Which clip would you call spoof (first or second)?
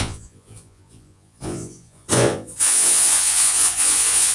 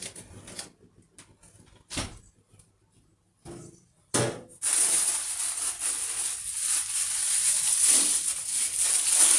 first